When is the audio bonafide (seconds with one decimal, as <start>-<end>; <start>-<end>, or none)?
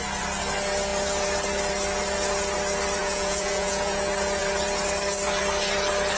0.0-3.0; 4.0-6.2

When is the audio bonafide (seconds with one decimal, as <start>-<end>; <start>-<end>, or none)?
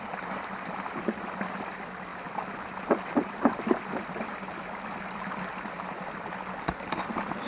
0.0-7.5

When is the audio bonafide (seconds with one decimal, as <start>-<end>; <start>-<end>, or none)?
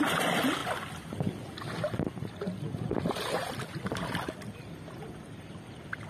none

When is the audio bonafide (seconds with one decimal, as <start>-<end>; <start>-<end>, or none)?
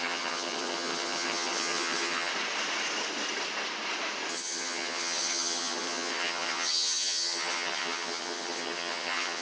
2.3-4.3